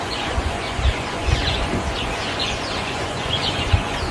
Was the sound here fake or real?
fake